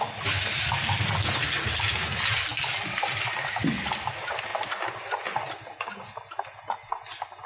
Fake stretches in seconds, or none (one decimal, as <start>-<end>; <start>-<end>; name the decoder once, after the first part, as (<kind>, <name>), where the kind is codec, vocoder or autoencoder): none